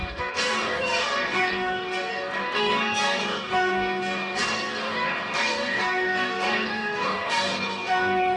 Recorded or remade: remade